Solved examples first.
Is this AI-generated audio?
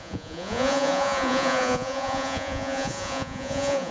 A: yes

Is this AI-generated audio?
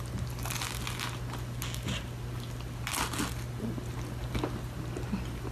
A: no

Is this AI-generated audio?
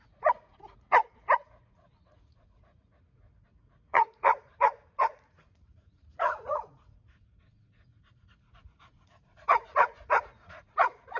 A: yes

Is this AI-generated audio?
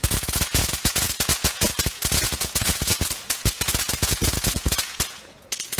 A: yes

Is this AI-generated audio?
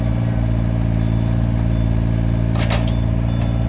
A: no